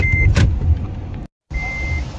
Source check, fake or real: real